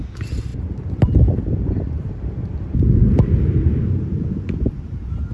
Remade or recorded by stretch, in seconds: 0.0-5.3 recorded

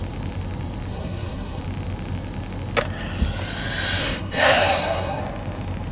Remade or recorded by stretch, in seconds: 0.0-0.9 recorded; 0.9-1.6 remade; 1.6-4.0 recorded; 4.0-5.2 remade; 5.2-5.9 recorded

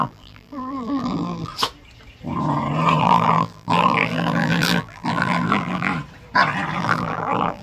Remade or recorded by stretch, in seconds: 0.0-1.5 remade; 1.5-3.0 recorded; 3.0-5.9 remade; 5.9-6.8 recorded; 6.8-7.6 remade

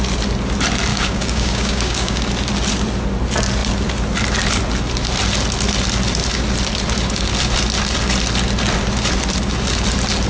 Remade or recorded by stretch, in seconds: 0.0-0.9 recorded; 0.9-2.2 remade; 2.2-10.3 recorded

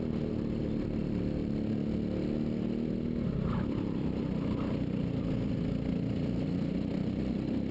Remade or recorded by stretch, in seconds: 0.0-7.7 recorded

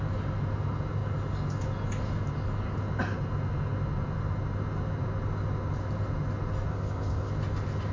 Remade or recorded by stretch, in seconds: 0.0-6.7 recorded; 6.7-7.3 remade; 7.3-7.9 recorded

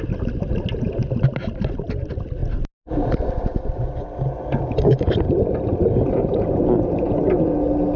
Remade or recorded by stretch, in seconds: 0.0-8.0 recorded